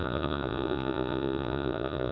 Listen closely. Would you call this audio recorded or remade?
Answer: remade